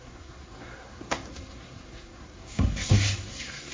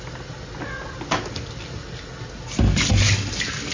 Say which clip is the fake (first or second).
first